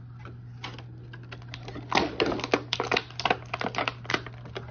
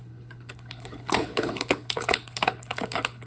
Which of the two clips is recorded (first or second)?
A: first